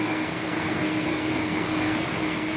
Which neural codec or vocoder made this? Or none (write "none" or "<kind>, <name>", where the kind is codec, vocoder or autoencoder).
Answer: codec, SNAC